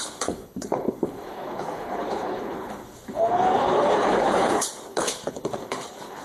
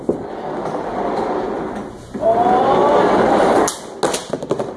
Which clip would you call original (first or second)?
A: second